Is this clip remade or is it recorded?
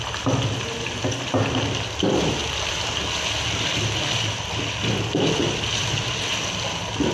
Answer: recorded